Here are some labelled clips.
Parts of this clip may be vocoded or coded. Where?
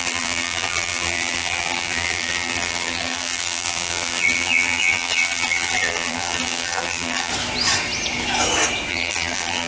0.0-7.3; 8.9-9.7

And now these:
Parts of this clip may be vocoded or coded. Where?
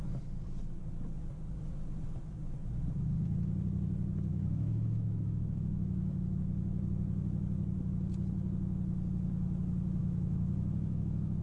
4.3-6.1; 10.0-11.4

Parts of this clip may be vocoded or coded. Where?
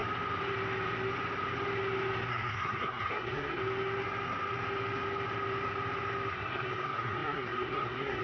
2.3-3.6; 6.3-8.2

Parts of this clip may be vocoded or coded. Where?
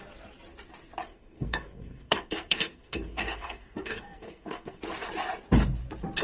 1.1-4.8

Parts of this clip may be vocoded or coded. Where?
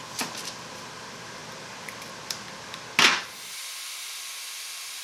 none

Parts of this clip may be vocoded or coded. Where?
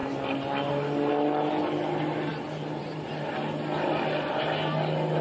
none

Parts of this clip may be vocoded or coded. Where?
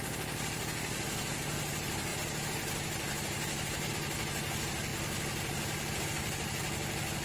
none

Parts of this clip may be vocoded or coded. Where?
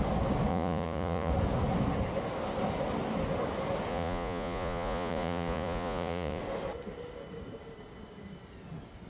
0.5-1.3; 3.9-6.4